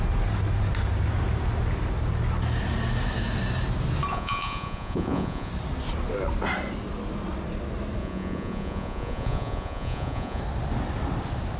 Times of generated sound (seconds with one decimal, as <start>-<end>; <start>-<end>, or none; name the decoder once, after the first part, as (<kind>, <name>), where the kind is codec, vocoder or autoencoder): 4.1-5.5 (vocoder, Vocos); 8.0-10.4